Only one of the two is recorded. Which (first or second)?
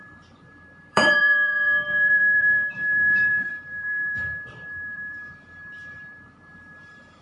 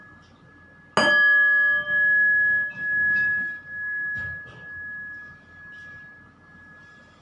second